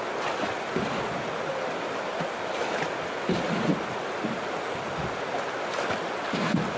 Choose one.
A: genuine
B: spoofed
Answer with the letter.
A